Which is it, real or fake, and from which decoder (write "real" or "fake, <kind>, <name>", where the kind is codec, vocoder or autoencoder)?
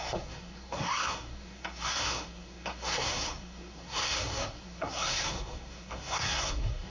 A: fake, codec, SNAC